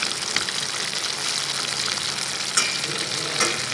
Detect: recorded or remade recorded